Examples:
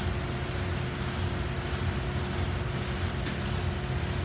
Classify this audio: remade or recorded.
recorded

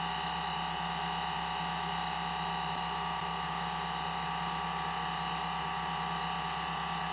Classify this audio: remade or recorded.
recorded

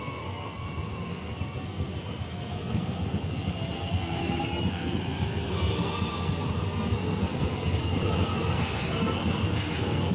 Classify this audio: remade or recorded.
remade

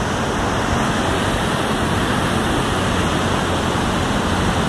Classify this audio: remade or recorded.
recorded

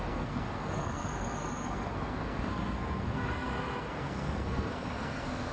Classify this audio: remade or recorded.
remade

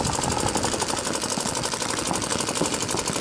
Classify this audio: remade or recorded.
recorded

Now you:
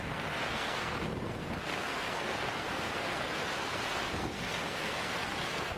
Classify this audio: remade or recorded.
remade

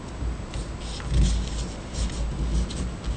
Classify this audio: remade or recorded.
recorded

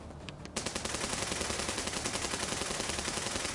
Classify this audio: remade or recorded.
recorded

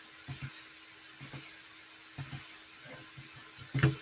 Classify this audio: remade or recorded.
recorded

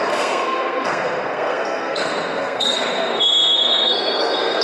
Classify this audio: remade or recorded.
remade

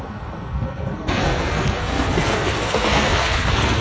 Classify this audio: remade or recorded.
remade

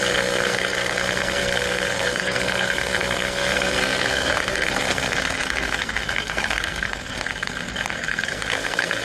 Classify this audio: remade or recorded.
remade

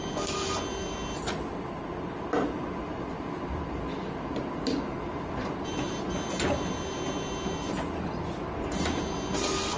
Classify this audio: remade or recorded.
recorded